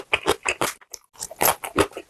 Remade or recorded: recorded